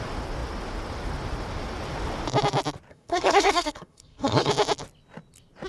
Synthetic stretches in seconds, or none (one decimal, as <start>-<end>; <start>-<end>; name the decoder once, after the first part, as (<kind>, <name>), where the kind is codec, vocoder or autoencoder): 2.9-4.5 (codec, SNAC)